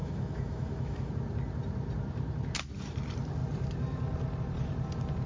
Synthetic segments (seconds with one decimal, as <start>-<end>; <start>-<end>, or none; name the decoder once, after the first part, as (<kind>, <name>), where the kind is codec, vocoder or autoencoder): 0.0-1.1 (autoencoder, DAC-VAE)